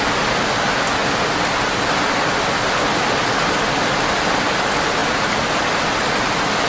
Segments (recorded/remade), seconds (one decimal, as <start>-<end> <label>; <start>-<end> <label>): 0.0-6.7 recorded